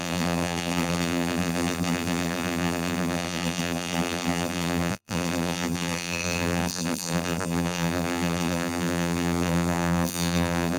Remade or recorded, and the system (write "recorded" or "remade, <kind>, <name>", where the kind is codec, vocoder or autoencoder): remade, vocoder, BigVGAN v2